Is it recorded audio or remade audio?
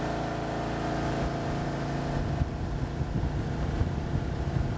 recorded